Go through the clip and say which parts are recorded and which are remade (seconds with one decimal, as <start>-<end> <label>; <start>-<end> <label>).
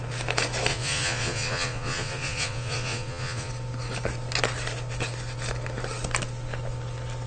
0.0-0.7 recorded; 0.7-3.5 remade; 3.5-7.3 recorded